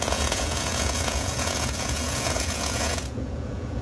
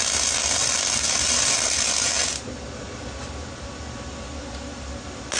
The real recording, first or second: second